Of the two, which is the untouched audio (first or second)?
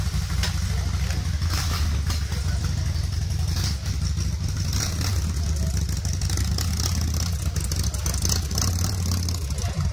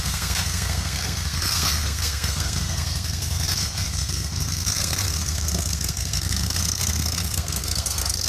first